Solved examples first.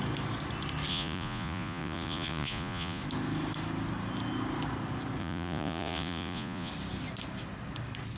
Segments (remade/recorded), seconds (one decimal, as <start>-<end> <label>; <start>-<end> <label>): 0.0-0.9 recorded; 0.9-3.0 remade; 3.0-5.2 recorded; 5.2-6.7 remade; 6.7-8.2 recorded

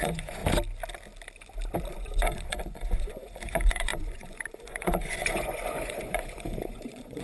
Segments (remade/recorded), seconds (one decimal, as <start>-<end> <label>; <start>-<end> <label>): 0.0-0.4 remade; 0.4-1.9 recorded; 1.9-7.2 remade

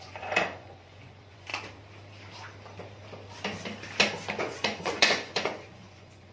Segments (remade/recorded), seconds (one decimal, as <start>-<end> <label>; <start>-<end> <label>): 0.0-1.5 remade; 1.5-4.4 recorded; 4.4-6.3 remade

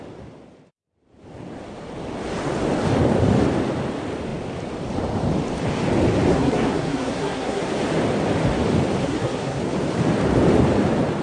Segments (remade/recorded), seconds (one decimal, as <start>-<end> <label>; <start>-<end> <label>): 0.0-6.3 recorded; 6.3-7.7 remade; 7.7-9.0 recorded; 9.0-9.6 remade; 9.6-11.2 recorded

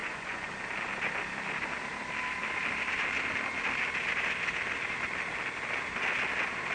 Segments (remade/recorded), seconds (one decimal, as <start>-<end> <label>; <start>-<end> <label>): 0.0-0.5 remade; 0.5-6.7 recorded

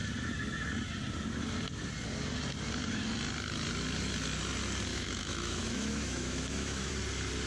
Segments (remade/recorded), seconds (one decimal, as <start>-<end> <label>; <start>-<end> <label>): 0.0-4.9 recorded; 4.9-6.9 remade; 6.9-7.5 recorded

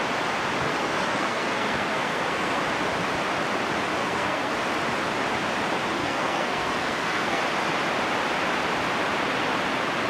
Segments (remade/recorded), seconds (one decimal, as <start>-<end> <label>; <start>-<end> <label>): 0.0-0.7 recorded; 0.7-2.6 remade; 2.6-4.0 recorded; 4.0-4.5 remade; 4.5-6.0 recorded; 6.0-7.4 remade; 7.4-10.1 recorded